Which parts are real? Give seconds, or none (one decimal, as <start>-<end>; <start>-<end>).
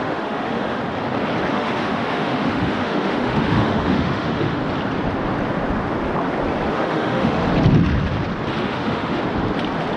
0.8-1.5; 4.6-6.7; 7.4-8.6; 9.2-10.0